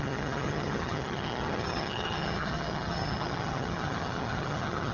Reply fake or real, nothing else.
fake